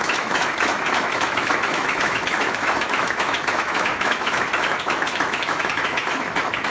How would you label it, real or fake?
fake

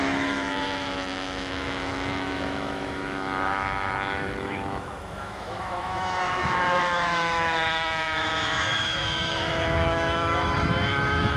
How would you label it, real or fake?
fake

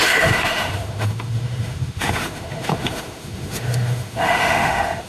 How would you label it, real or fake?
fake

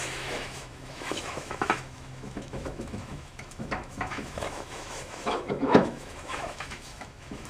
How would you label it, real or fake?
fake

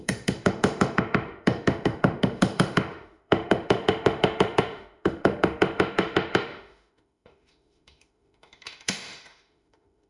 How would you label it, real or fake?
fake